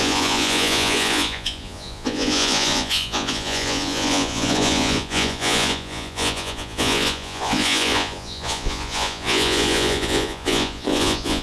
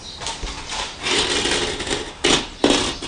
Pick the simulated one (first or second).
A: first